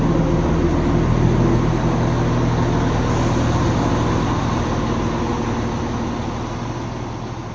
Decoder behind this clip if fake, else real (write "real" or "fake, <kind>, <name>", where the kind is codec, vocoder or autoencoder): real